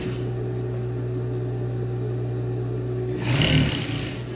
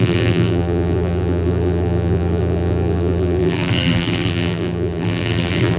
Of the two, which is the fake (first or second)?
second